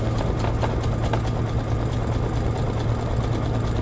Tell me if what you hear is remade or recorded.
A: recorded